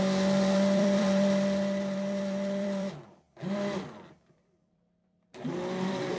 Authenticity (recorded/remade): remade